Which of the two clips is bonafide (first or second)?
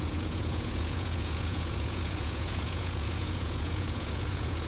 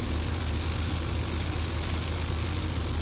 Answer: second